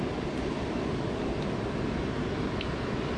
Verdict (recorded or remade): recorded